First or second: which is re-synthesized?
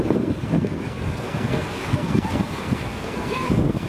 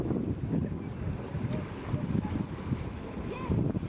first